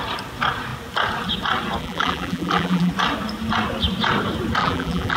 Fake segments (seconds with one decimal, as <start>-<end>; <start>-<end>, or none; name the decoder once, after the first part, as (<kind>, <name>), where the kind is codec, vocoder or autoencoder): 1.8-2.9 (vocoder, BigVGAN v2); 4.6-5.2